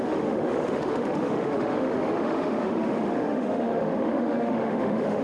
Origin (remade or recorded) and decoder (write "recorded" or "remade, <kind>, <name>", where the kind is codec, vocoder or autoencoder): remade, autoencoder, DAC-VAE